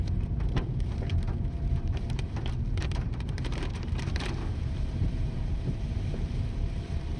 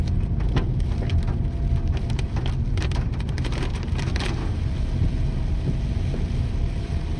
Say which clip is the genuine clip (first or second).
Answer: second